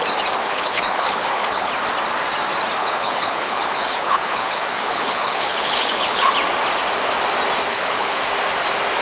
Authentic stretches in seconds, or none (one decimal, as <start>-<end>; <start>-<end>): 0.0-0.4; 1.7-2.8; 6.3-7.7; 8.2-9.0